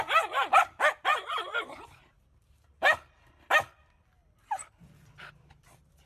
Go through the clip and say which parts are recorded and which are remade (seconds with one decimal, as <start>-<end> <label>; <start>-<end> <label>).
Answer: 0.0-1.1 recorded; 1.1-2.8 remade; 2.8-6.1 recorded